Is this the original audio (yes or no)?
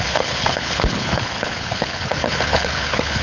no